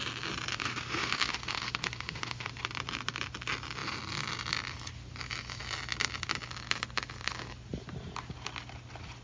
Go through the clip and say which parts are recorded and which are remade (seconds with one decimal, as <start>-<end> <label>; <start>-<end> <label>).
0.0-0.5 recorded; 0.5-2.5 remade; 2.5-9.2 recorded